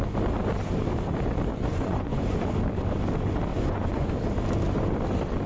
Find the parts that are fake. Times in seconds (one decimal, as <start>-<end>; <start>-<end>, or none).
1.5-2.2; 3.5-4.1